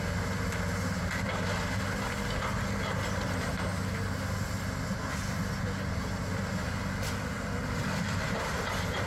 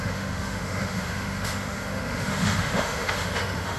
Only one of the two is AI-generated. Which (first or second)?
second